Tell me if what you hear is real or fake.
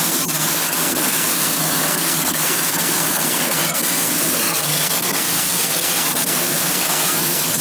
fake